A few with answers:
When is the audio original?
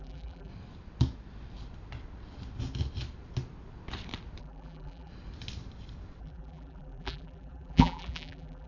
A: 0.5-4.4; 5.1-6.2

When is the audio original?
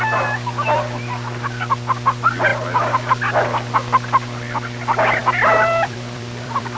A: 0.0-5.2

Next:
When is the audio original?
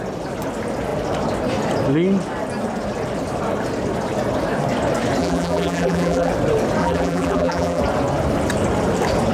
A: 0.0-5.2; 6.3-6.8; 7.8-9.3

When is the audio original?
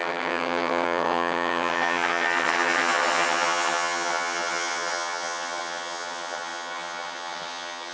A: none